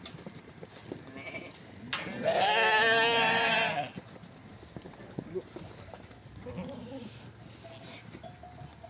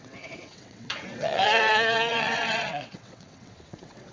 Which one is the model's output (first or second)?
second